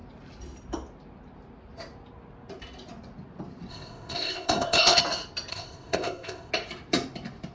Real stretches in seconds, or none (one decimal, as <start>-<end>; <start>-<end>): 0.0-3.7; 5.0-5.5; 6.5-7.5